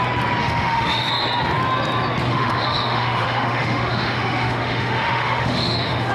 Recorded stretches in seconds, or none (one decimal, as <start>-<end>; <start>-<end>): 0.0-0.4; 1.1-2.3